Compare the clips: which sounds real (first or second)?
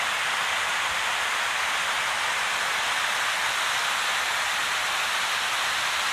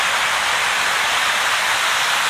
first